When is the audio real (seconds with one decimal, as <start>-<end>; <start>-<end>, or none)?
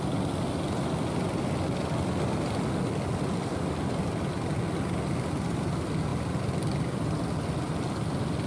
0.0-8.5